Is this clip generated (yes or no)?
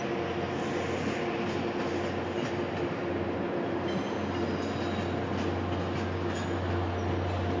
no